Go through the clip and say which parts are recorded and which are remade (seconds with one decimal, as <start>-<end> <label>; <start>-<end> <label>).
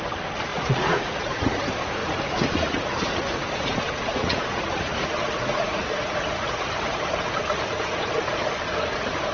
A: 0.0-0.5 recorded; 0.5-1.6 remade; 1.6-2.0 recorded; 2.0-6.7 remade; 6.7-9.3 recorded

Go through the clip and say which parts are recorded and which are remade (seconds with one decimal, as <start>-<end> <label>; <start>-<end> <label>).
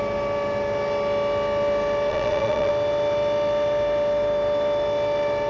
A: 0.0-2.1 recorded; 2.1-2.7 remade; 2.7-5.5 recorded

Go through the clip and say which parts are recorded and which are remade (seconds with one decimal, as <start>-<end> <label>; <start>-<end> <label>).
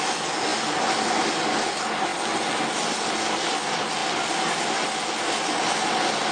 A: 0.0-6.3 recorded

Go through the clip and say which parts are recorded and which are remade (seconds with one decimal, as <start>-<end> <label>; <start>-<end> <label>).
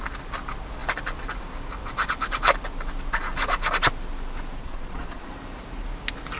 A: 0.0-4.6 recorded; 4.6-5.3 remade; 5.3-6.4 recorded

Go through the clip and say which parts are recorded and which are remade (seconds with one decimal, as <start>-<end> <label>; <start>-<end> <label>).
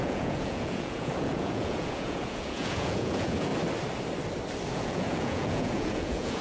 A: 0.0-3.5 remade; 3.5-4.7 recorded; 4.7-6.4 remade